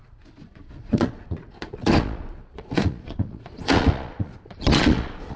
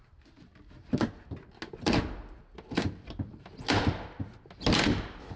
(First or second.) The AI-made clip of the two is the first